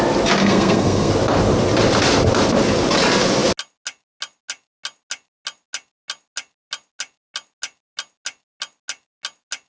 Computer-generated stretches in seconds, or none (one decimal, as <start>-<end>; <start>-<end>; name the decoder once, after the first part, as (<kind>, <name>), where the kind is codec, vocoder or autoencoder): 0.4-1.1 (codec, SNAC)